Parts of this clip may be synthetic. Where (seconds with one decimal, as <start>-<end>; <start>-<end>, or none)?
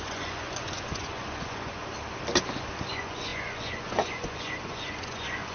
0.0-1.8; 2.9-5.5